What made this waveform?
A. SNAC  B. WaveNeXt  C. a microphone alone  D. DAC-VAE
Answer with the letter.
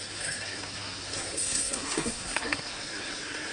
A